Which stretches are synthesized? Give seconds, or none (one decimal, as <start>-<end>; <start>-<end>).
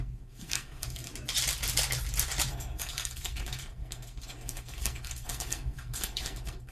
0.0-1.1; 2.5-6.7